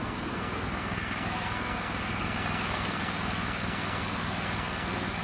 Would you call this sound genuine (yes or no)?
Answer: no